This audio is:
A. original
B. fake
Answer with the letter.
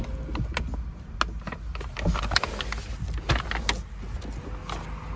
A